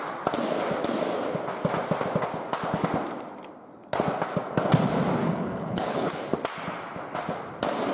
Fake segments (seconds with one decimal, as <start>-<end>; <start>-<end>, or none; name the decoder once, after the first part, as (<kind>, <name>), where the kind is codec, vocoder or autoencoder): 5.2-6.1 (codec, HILCodec)